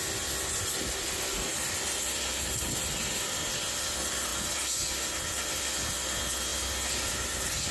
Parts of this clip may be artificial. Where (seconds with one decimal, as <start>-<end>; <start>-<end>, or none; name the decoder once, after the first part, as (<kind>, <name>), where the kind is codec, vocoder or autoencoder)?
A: none